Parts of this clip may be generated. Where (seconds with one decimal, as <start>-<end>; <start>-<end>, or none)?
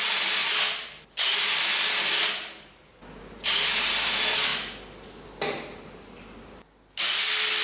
none